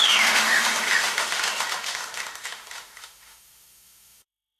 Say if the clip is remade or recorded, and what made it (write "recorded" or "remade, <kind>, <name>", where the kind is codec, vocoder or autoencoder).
remade, autoencoder, DAC-VAE